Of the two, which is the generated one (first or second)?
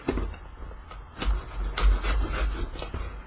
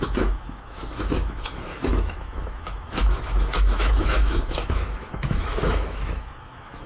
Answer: second